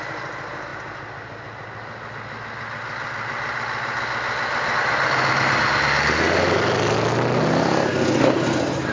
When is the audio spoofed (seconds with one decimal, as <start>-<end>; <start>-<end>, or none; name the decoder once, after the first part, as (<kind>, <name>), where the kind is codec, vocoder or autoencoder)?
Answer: none